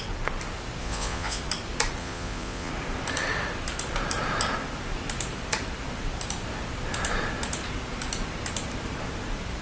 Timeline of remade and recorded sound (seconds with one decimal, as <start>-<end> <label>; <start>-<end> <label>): 0.0-0.8 recorded; 0.8-1.4 remade; 1.4-2.0 recorded; 2.0-2.7 remade; 2.7-9.6 recorded